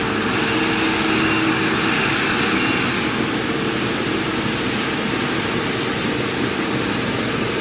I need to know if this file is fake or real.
real